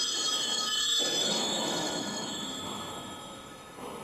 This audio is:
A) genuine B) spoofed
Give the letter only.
B